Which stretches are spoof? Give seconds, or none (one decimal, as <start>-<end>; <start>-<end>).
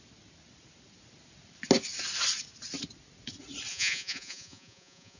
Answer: 3.7-5.2